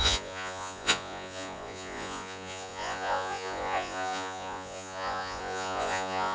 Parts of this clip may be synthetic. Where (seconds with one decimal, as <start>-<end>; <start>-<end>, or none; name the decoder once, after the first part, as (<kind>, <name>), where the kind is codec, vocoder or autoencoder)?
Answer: 0.0-6.3 (vocoder, Vocos)